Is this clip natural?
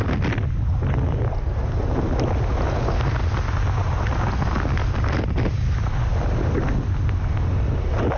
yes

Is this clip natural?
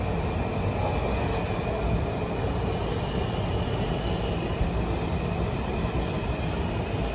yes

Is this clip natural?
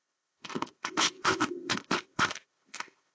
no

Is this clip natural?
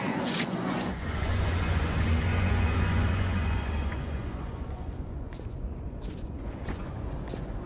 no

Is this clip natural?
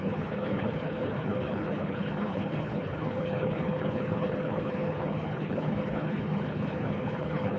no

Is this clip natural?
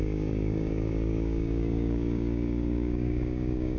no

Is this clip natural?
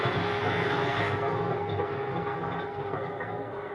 no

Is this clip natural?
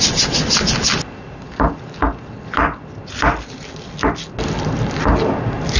yes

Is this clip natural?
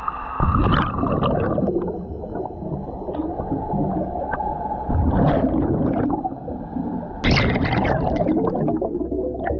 yes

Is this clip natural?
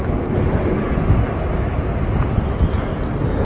yes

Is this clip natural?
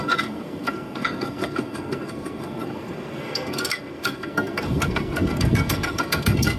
no